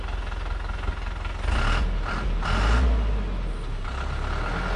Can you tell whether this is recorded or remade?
recorded